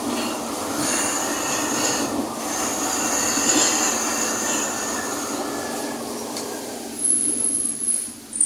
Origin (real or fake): real